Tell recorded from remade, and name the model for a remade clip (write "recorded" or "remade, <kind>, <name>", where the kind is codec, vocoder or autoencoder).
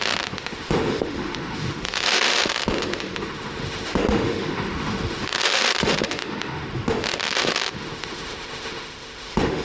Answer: remade, autoencoder, DAC-VAE